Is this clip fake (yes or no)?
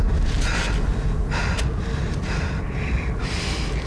no